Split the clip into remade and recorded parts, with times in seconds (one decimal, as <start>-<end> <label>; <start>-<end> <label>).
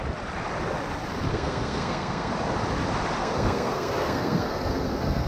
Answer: 0.0-1.3 recorded; 1.3-2.3 remade; 2.3-3.2 recorded; 3.2-5.3 remade